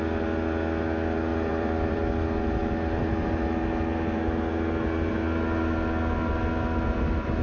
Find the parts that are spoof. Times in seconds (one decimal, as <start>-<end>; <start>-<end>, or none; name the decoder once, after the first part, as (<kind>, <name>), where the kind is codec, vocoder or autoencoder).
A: 1.3-2.0 (vocoder, BigVGAN v2)